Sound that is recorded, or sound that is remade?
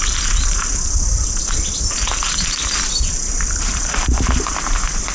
recorded